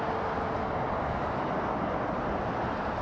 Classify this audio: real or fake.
real